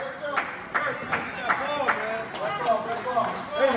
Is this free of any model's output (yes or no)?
yes